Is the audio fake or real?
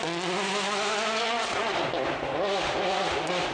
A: real